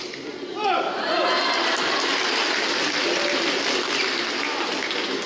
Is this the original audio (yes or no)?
yes